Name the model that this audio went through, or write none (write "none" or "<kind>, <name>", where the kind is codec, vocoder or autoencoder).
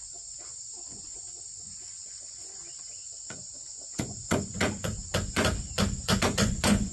vocoder, Vocos